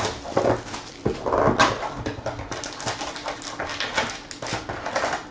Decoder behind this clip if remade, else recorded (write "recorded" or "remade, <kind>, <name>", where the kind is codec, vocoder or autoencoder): recorded